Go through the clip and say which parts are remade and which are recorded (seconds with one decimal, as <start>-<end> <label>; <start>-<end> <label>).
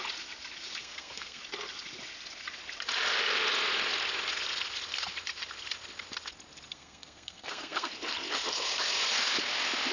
0.0-0.8 recorded; 0.8-1.4 remade; 1.4-6.7 recorded; 6.7-7.9 remade; 7.9-9.9 recorded